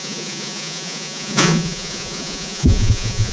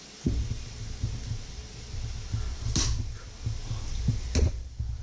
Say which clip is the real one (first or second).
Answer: second